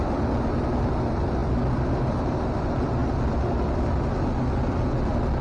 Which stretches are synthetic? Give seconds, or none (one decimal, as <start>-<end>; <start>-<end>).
none